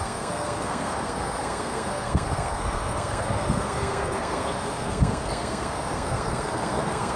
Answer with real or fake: fake